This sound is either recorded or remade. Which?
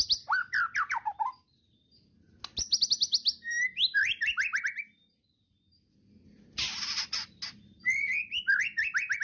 recorded